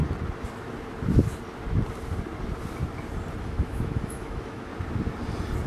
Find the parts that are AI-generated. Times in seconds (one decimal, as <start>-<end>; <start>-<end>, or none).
3.4-4.7